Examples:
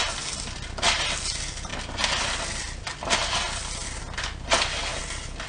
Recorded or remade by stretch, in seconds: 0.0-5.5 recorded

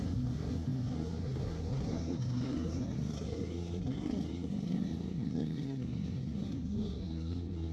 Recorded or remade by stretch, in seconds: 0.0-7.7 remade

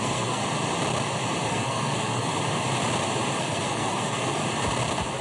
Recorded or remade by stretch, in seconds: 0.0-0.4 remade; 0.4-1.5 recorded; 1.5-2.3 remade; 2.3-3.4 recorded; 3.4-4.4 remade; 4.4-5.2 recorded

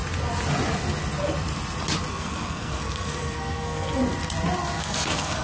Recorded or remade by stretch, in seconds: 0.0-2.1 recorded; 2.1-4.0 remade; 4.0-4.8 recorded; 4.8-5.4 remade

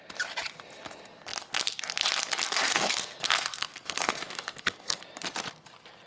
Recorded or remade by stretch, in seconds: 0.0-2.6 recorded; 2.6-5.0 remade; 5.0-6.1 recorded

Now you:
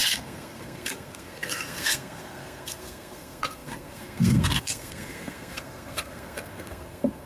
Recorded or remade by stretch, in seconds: 0.0-7.2 remade